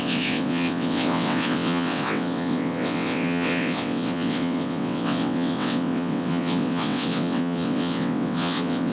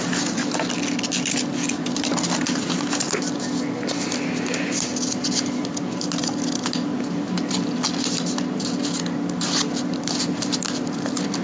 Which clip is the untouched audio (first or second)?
second